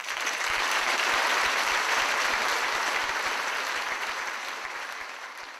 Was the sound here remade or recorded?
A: remade